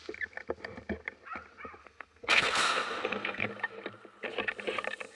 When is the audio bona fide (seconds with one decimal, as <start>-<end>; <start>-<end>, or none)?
0.0-1.8; 3.5-5.1